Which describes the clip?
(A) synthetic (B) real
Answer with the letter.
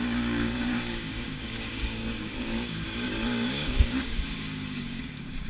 A